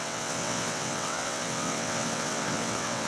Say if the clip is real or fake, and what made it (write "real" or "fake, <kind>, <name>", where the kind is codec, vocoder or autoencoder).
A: fake, vocoder, WaveNeXt